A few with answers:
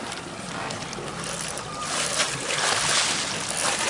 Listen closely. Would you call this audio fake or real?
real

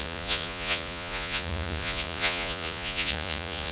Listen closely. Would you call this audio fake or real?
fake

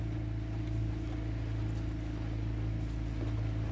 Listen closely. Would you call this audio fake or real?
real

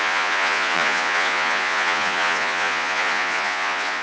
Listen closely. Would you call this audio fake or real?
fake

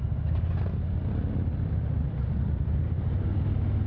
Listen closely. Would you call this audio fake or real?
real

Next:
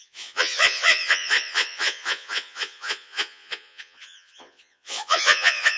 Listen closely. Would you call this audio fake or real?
fake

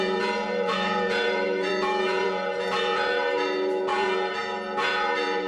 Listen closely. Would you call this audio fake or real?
fake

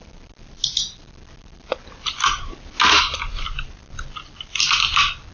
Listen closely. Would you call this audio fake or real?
real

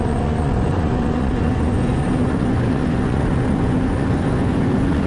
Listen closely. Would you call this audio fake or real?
fake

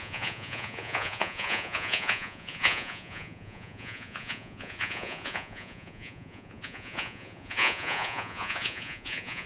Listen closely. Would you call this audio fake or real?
fake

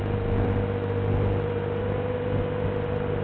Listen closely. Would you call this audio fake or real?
real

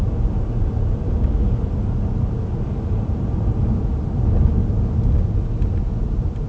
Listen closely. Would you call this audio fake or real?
real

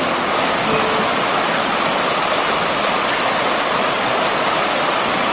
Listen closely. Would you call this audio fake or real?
real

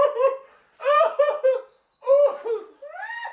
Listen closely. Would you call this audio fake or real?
real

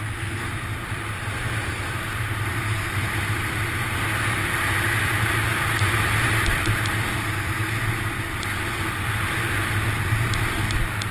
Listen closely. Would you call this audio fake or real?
real